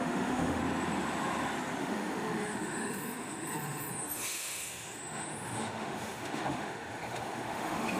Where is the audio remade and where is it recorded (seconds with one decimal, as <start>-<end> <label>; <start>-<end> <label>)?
0.0-0.6 remade; 0.6-1.8 recorded; 1.8-8.0 remade